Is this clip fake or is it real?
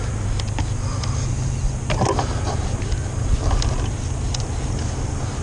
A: real